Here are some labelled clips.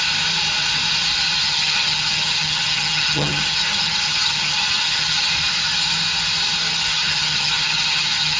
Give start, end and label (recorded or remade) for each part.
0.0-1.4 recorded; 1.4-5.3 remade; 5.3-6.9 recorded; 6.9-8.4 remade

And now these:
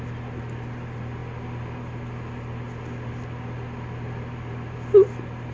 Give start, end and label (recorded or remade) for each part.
0.0-5.5 recorded

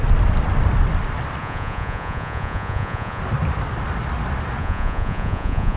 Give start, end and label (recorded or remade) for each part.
0.0-1.4 recorded; 1.4-3.2 remade; 3.2-4.6 recorded; 4.6-5.8 remade

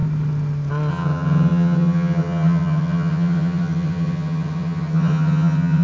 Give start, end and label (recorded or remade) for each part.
0.0-0.9 recorded; 0.9-5.8 remade

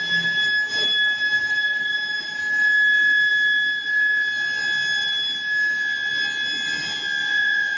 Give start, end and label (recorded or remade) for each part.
0.0-7.2 recorded; 7.2-7.8 remade

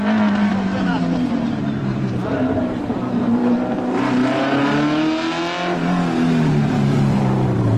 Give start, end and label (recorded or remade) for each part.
0.0-0.5 recorded; 0.5-4.6 remade; 4.6-7.1 recorded; 7.1-7.8 remade

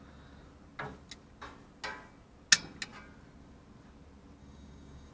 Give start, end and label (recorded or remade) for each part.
0.0-4.4 recorded; 4.4-5.1 remade

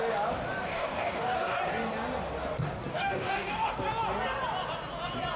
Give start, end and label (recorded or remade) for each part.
0.0-0.7 recorded; 0.7-1.6 remade; 1.6-2.9 recorded; 2.9-3.7 remade; 3.7-5.4 recorded